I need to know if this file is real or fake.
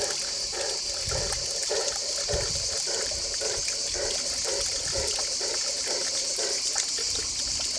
real